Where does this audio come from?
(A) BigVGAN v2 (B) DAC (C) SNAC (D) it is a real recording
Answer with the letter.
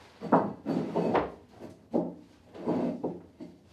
D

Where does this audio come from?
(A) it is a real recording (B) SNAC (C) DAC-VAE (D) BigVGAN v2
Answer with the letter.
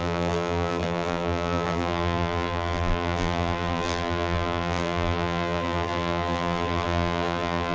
D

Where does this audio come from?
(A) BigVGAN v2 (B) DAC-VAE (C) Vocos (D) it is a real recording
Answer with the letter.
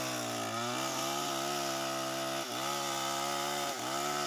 D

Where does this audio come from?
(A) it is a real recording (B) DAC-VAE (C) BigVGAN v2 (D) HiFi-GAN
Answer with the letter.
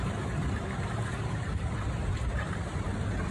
C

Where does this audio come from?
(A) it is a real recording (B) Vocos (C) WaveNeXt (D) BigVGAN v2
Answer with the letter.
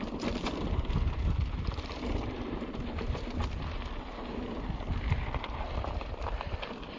D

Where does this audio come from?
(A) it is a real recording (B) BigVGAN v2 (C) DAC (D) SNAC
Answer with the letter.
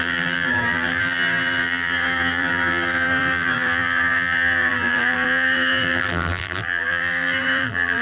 B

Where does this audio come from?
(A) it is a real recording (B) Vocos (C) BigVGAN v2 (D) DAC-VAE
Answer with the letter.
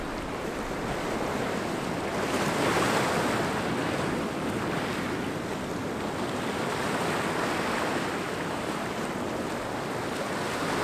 A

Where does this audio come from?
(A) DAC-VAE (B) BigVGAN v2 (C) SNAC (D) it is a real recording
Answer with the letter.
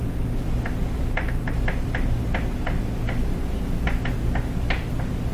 D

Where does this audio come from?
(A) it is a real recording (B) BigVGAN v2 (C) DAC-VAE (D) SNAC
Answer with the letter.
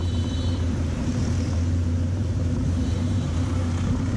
B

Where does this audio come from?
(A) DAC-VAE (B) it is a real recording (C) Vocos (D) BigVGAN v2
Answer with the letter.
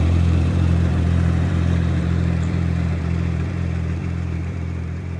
D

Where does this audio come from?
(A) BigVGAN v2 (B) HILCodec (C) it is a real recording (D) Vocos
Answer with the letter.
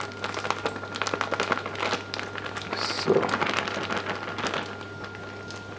C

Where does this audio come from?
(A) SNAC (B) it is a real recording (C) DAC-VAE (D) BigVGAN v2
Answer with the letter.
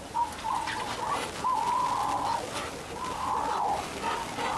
B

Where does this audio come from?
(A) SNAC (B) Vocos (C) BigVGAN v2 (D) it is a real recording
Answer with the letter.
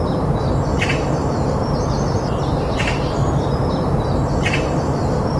C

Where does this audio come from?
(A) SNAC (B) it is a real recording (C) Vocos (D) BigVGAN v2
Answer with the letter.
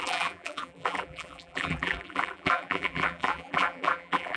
D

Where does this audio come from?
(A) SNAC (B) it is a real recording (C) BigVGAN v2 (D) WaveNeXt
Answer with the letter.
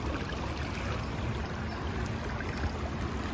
C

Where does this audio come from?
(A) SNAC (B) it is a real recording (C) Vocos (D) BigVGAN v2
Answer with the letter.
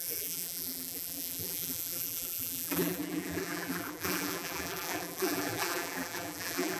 D